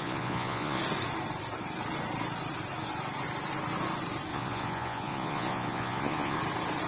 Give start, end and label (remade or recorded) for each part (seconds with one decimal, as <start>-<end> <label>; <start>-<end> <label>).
0.0-0.8 remade; 0.8-4.3 recorded; 4.3-6.4 remade; 6.4-6.9 recorded